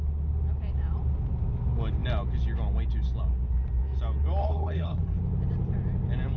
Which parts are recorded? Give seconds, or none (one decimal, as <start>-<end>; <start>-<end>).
0.0-4.4; 5.2-6.4